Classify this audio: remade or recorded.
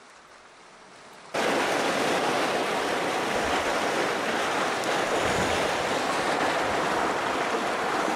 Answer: recorded